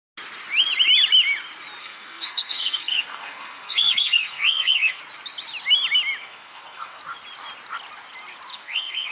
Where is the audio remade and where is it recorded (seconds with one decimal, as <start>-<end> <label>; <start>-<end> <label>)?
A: 0.0-1.8 recorded; 1.8-5.0 remade; 5.0-6.2 recorded; 6.2-7.0 remade; 7.0-8.5 recorded; 8.5-9.1 remade